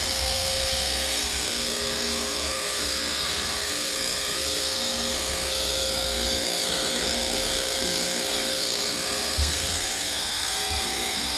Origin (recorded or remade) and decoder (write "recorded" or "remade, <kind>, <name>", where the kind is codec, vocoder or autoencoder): remade, codec, SNAC